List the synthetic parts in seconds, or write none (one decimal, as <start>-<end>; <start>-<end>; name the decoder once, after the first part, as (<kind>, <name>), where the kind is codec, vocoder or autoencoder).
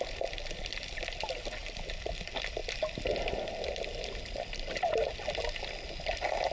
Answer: 1.6-2.1 (vocoder, BigVGAN v2)